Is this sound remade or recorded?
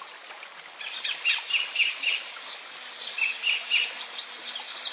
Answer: recorded